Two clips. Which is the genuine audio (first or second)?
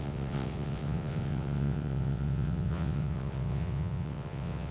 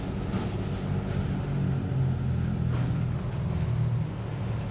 second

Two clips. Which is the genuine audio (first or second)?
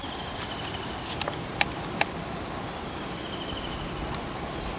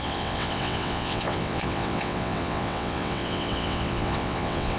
first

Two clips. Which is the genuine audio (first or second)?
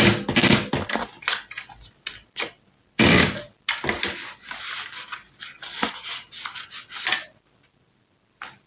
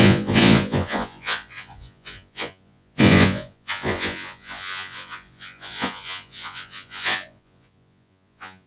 first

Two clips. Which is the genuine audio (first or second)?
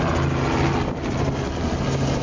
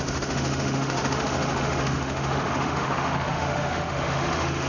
first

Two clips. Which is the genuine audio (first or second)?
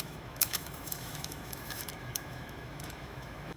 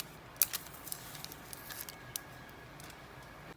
second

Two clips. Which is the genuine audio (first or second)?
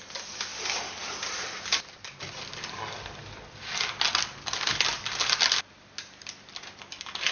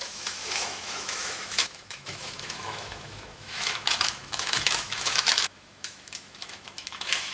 first